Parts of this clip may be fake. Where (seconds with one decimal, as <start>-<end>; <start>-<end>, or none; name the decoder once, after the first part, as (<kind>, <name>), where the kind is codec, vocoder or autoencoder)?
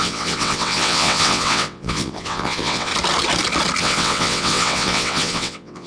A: 0.0-2.9 (vocoder, WaveNeXt); 3.8-5.9